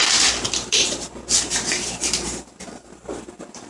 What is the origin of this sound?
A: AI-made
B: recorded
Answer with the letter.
B